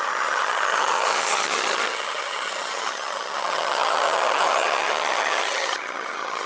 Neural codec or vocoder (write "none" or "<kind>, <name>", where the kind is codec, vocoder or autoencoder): vocoder, HiFi-GAN